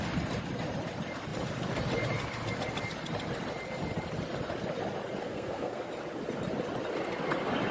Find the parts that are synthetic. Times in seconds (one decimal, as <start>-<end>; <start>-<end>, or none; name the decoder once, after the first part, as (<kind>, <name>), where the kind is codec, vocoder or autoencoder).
5.2-5.9 (codec, SNAC)